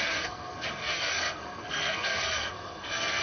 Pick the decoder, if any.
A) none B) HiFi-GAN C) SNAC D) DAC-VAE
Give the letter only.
C